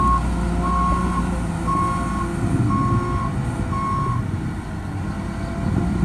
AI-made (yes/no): no